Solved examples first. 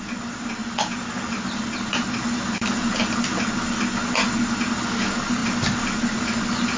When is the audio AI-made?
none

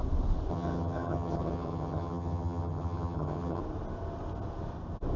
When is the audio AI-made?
0.5-3.6 (vocoder, HiFi-GAN)